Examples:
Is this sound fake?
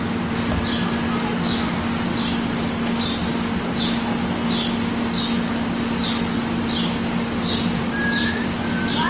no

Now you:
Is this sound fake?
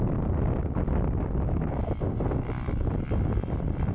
yes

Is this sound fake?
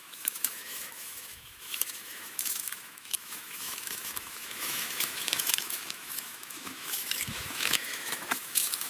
yes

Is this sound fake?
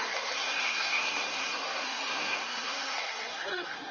yes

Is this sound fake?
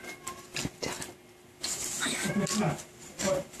no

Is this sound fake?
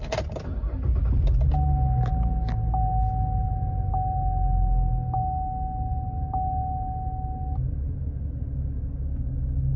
no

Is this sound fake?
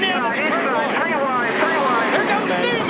no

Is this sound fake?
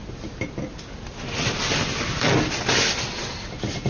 no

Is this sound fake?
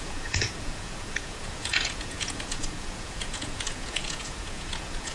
yes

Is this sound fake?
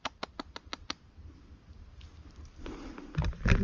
no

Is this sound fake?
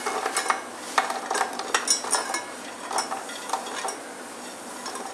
no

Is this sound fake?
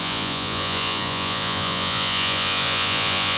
yes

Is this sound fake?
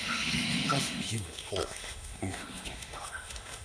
yes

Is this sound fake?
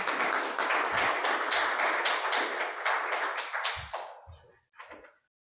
no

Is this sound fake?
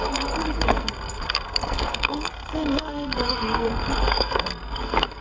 yes